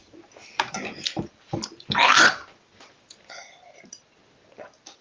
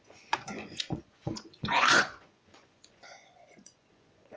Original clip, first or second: first